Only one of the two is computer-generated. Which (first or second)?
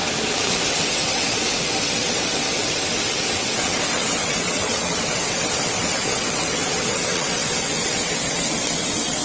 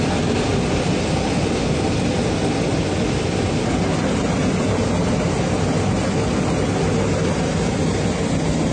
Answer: first